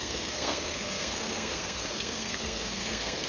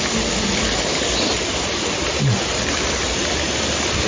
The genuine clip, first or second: second